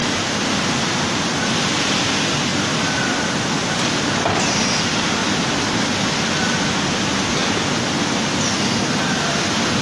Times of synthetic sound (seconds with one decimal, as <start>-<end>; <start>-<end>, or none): 2.5-3.2; 5.2-5.8